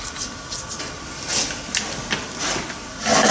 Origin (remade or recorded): recorded